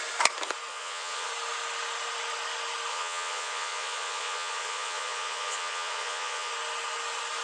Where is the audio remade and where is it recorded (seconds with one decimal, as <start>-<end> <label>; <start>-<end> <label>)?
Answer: 0.0-0.7 recorded; 0.7-1.3 remade; 1.3-2.9 recorded; 2.9-6.5 remade; 6.5-7.4 recorded